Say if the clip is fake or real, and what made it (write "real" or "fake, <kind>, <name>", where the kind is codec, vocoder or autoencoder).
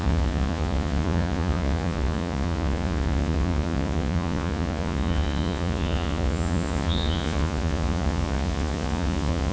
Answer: fake, vocoder, Vocos